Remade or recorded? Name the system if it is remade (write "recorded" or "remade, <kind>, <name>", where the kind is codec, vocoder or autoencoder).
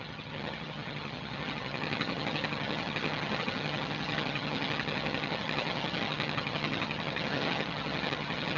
remade, vocoder, HiFi-GAN